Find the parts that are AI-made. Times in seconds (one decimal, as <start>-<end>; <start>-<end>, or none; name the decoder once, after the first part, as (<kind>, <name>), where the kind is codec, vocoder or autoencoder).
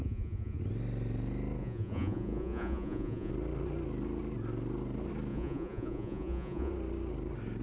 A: 0.0-0.6 (vocoder, Vocos); 1.6-3.3; 5.3-6.7